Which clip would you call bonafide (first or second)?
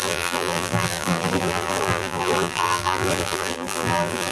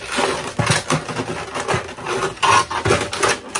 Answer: second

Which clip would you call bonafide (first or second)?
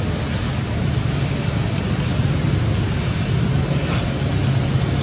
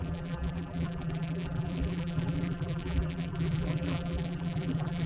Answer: first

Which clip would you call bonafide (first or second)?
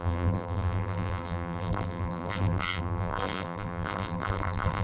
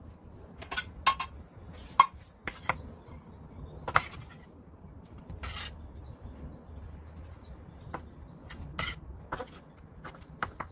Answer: second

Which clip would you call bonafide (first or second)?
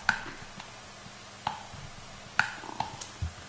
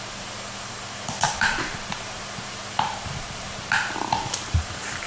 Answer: first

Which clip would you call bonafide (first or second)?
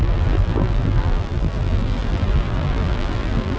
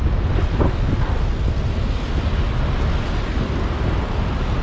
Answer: second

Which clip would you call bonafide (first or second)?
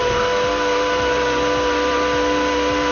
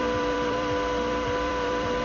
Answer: first